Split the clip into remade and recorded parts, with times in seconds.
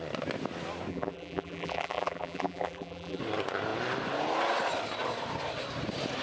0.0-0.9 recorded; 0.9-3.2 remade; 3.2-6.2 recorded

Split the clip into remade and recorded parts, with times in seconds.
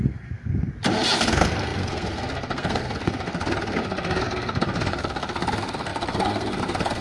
0.0-0.7 remade; 0.7-1.2 recorded; 1.2-7.0 remade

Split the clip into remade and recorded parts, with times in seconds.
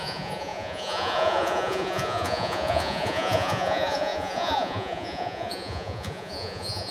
0.0-6.9 remade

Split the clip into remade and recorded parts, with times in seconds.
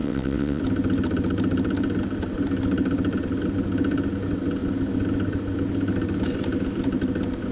0.0-0.6 remade; 0.6-7.5 recorded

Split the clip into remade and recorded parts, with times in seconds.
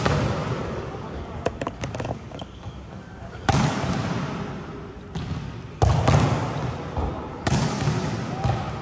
0.0-0.6 recorded; 0.6-3.8 remade; 3.8-7.3 recorded; 7.3-7.9 remade; 7.9-8.8 recorded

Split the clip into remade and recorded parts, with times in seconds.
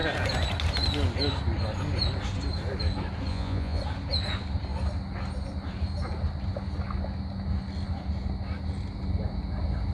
0.0-3.3 recorded; 3.3-3.8 remade; 3.8-9.9 recorded